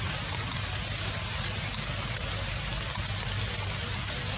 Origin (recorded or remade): recorded